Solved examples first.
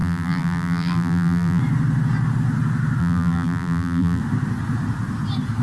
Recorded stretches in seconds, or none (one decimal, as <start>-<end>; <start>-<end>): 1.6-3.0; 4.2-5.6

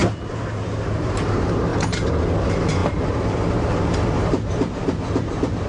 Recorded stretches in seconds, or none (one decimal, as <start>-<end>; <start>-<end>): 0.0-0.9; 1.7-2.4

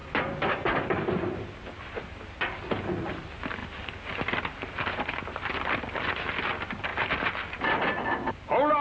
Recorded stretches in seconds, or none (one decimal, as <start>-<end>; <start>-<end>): 2.5-8.8